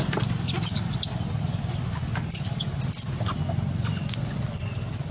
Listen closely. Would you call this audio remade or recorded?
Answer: recorded